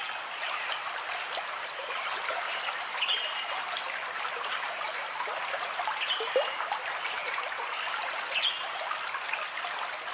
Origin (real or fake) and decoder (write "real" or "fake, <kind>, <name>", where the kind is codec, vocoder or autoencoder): real